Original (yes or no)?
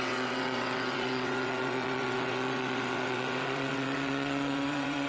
no